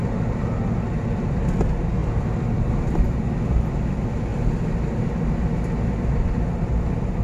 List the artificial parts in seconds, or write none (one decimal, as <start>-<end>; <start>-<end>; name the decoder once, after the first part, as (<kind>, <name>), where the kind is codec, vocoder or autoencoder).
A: none